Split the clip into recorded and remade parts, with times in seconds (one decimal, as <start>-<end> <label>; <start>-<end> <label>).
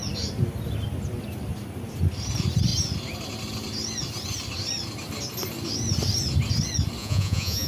0.0-7.0 recorded; 7.0-7.7 remade